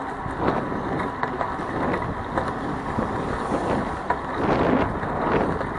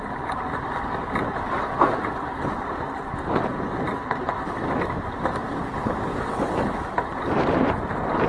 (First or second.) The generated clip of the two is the second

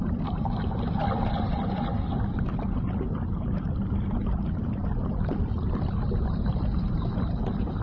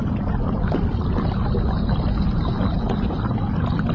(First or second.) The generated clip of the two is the first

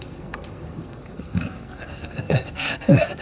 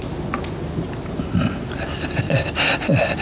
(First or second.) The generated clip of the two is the first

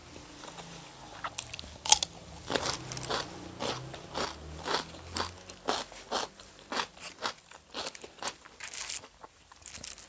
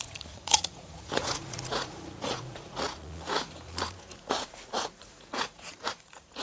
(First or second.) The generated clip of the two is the second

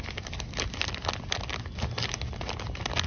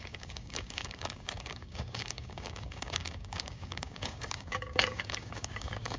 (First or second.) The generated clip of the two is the second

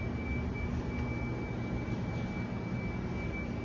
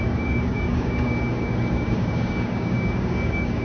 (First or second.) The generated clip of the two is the second